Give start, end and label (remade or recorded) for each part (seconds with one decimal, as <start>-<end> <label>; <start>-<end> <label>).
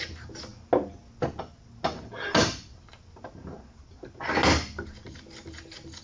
0.0-6.0 recorded